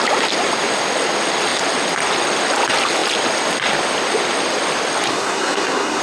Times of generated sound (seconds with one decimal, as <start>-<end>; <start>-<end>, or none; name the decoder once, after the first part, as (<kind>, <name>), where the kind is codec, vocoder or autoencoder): 5.1-6.0 (codec, SNAC)